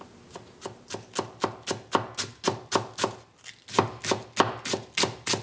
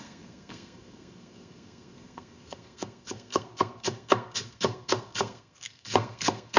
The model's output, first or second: second